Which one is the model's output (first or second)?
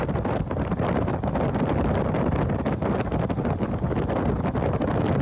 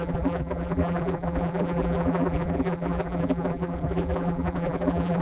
second